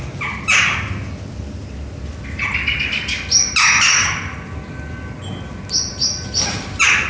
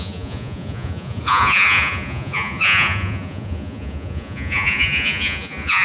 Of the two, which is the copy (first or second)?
second